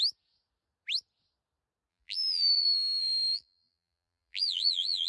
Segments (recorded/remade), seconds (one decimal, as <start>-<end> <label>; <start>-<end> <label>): 0.0-1.9 recorded; 1.9-5.1 remade